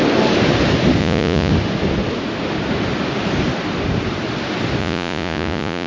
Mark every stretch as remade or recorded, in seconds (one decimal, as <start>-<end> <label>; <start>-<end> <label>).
0.0-1.0 recorded; 1.0-1.5 remade; 1.5-4.8 recorded; 4.8-5.9 remade

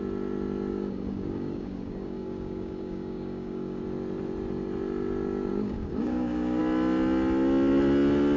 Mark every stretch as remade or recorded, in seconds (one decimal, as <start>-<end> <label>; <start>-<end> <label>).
0.0-0.7 recorded; 0.7-3.8 remade; 3.8-5.5 recorded; 5.5-6.6 remade; 6.6-8.4 recorded